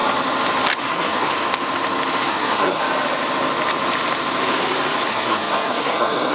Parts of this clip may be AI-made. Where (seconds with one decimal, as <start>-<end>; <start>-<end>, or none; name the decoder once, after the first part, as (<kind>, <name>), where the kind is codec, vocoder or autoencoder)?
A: 0.8-1.3 (codec, SNAC); 2.3-2.8; 5.1-6.3